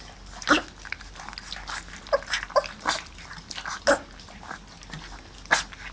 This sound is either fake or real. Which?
real